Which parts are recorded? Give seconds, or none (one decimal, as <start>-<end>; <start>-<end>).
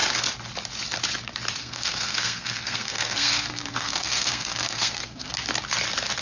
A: 0.0-1.6; 5.3-6.2